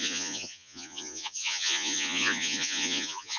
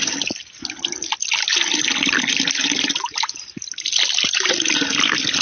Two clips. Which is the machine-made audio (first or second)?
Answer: first